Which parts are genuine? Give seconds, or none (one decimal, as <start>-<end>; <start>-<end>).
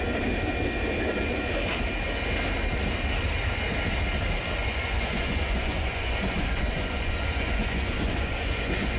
0.0-4.6